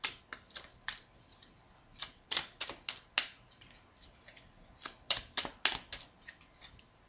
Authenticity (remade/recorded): recorded